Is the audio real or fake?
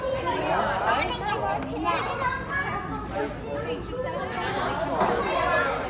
real